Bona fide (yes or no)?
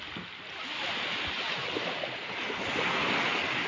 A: yes